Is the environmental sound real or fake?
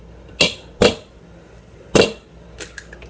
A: real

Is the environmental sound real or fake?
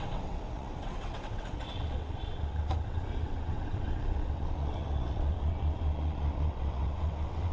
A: fake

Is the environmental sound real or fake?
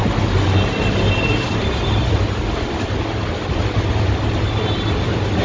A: real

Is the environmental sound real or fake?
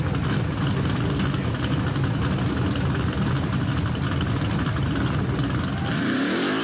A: real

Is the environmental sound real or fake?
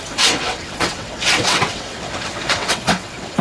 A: fake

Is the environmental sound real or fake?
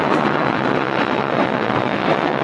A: fake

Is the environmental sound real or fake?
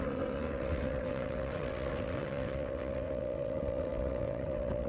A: fake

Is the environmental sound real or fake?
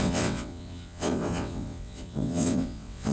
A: fake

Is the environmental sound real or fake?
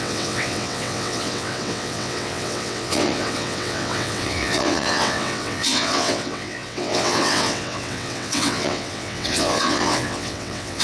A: fake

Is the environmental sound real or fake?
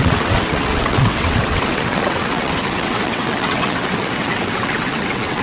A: fake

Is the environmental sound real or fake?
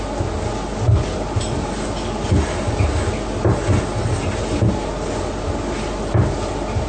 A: real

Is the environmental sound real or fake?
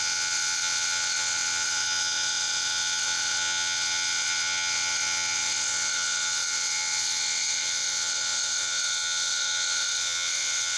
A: fake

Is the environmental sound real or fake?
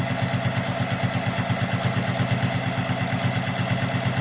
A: real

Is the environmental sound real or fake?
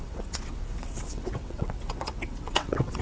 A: fake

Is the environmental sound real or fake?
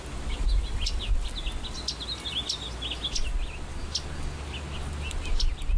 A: real